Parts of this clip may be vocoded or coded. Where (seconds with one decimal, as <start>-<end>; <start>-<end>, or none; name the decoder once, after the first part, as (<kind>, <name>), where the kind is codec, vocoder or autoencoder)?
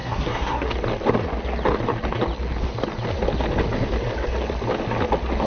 0.0-0.7 (codec, SNAC)